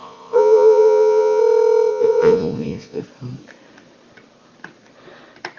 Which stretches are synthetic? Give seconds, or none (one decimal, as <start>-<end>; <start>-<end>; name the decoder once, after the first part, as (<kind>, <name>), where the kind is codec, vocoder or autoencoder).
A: 0.0-1.4 (vocoder, Vocos); 1.9-3.0